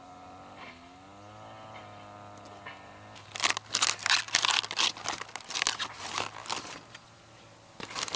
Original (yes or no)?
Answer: yes